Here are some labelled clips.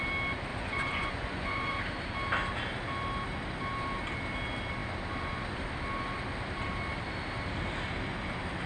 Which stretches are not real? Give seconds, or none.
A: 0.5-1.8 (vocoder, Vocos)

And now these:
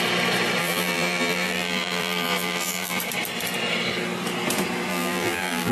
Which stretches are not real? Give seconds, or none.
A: 0.6-3.0 (vocoder, BigVGAN v2); 4.9-5.7

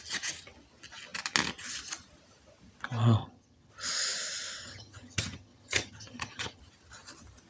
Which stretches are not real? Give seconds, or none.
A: 3.2-3.7 (vocoder, HiFi-GAN); 4.6-6.6

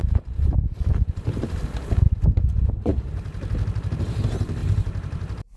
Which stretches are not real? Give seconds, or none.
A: 2.9-3.5 (vocoder, BigVGAN v2); 4.6-5.6

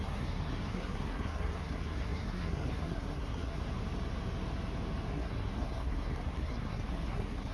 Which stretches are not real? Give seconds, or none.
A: 0.0-3.6 (codec, SNAC); 5.1-7.5